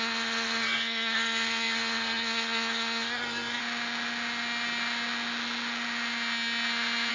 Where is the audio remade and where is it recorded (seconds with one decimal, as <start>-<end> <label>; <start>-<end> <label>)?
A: 0.0-3.6 remade; 3.6-7.1 recorded

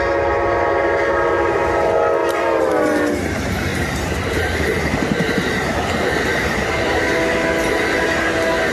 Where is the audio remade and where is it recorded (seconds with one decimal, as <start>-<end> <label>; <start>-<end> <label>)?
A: 0.0-2.2 recorded; 2.2-2.7 remade; 2.7-3.7 recorded; 3.7-7.0 remade; 7.0-8.7 recorded

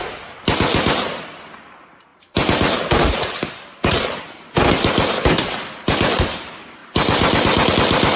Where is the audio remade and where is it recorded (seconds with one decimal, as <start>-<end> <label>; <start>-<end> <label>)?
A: 0.0-2.1 recorded; 2.1-4.2 remade; 4.2-6.8 recorded; 6.8-7.7 remade; 7.7-8.2 recorded

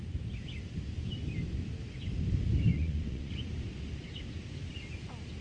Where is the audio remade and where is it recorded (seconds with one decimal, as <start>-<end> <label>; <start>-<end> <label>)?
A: 0.0-2.7 recorded; 2.7-3.3 remade; 3.3-5.4 recorded

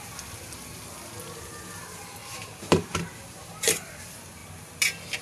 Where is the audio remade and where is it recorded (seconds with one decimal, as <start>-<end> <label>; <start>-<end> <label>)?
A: 0.0-2.2 recorded; 2.2-4.0 remade; 4.0-5.2 recorded